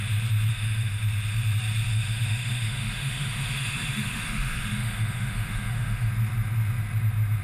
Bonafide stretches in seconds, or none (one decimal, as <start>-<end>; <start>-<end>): 0.0-0.5; 1.0-1.9; 6.1-7.4